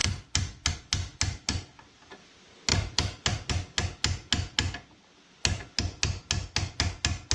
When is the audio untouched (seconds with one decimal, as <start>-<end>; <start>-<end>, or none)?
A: 0.0-2.7; 3.5-7.3